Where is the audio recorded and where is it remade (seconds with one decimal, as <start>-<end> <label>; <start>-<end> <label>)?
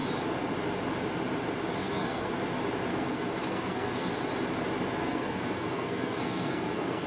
0.0-1.8 recorded; 1.8-2.3 remade; 2.3-2.9 recorded; 2.9-4.1 remade; 4.1-5.0 recorded; 5.0-7.1 remade